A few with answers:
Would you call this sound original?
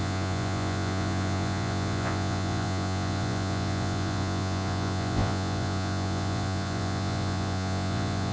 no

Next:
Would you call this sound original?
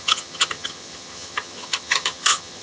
no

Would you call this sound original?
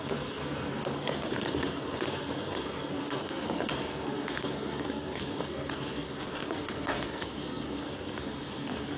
no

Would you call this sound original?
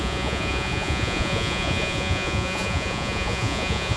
no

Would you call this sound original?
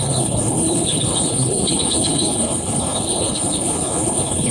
no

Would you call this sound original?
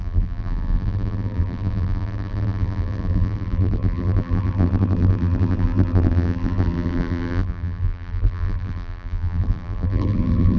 no